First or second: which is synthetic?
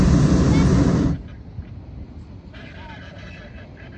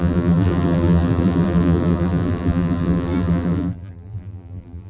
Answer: second